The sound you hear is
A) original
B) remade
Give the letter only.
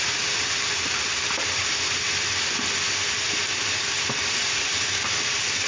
B